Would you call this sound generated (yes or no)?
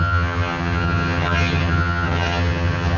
yes